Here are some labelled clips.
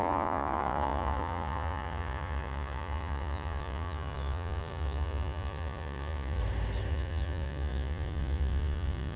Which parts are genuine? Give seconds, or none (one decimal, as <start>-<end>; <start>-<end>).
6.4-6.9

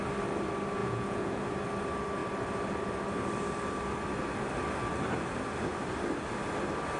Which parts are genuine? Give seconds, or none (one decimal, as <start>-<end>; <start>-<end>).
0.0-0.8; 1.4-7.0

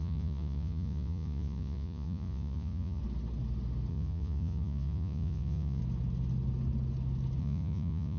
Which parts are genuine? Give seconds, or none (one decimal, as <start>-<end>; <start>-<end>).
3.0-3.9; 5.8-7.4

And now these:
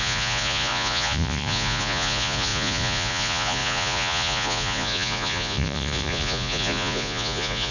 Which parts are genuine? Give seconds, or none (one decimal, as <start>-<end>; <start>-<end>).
none

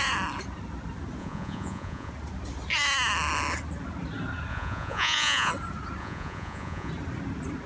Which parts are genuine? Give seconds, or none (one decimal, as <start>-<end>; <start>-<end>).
0.0-1.2; 2.1-4.5; 5.5-6.0; 6.9-7.7

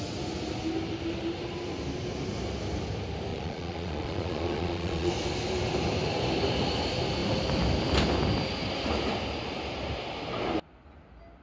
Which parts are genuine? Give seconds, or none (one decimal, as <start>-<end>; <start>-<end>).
0.0-3.3; 5.1-11.4

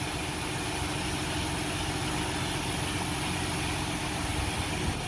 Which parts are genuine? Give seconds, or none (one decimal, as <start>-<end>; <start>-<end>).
0.0-5.1